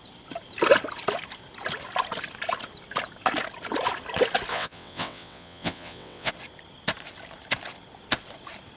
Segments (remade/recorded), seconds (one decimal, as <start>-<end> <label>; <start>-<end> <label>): 0.0-4.5 recorded; 4.5-6.3 remade; 6.3-8.8 recorded